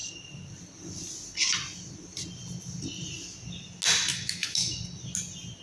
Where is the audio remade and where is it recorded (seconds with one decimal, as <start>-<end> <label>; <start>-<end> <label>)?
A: 0.0-4.1 recorded; 4.1-4.8 remade; 4.8-5.6 recorded